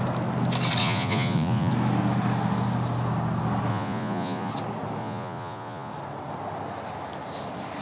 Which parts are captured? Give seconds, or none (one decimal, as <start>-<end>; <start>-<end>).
0.0-0.8; 1.7-3.7; 4.5-5.0; 5.9-7.8